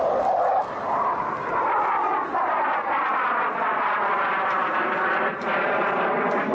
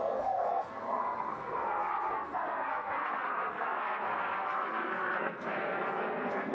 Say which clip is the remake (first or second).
second